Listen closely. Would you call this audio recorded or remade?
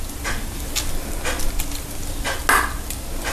recorded